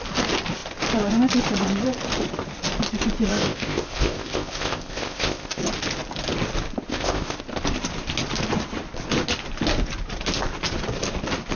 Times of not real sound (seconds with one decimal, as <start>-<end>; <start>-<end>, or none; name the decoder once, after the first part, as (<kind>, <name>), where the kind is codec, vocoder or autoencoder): 3.3-5.6 (codec, ZipCodec); 6.9-7.4